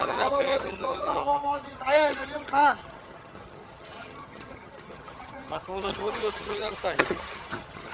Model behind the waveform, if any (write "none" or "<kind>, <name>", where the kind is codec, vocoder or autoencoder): vocoder, HiFi-GAN